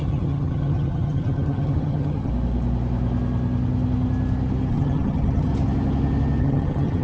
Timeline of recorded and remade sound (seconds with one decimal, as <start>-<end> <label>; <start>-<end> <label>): 0.0-2.3 remade; 2.3-4.7 recorded; 4.7-5.5 remade; 5.5-6.4 recorded; 6.4-7.0 remade